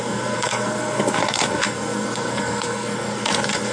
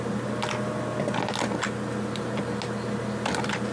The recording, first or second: second